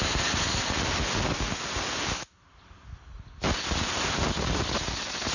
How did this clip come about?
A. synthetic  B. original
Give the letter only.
B